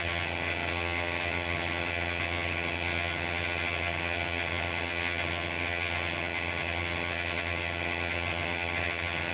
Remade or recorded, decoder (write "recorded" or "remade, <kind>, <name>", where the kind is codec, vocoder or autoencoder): remade, vocoder, HiFi-GAN